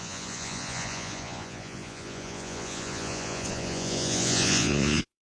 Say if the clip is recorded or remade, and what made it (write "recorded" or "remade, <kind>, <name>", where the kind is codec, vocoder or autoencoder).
remade, vocoder, Vocos